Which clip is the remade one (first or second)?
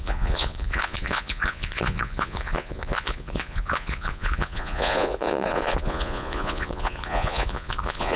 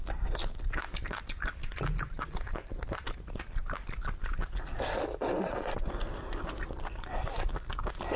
first